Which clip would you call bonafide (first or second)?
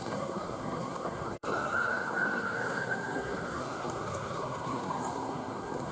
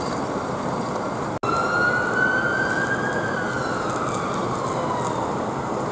second